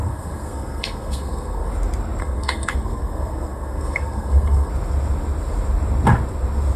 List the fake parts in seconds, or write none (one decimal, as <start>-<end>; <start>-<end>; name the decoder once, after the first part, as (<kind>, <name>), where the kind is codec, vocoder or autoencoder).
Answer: 0.0-1.7 (codec, SNAC); 2.2-4.7